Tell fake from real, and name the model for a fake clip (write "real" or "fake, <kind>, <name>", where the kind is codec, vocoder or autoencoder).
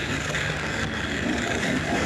fake, codec, DAC